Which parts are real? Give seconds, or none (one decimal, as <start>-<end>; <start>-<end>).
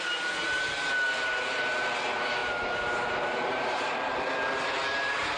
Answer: 0.0-2.4; 4.2-5.4